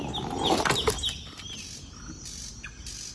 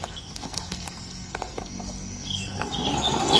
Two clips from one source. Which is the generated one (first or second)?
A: second